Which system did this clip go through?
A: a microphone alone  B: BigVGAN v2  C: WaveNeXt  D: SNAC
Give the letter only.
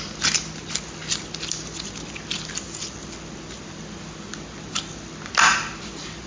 A